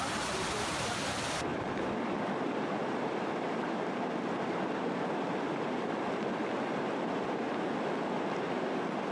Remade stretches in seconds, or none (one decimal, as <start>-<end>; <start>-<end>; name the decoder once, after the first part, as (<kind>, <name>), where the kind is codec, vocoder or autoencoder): none